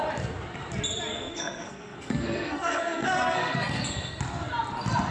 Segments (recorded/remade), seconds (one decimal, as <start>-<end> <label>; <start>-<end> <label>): 0.0-1.1 recorded; 1.1-4.2 remade; 4.2-5.1 recorded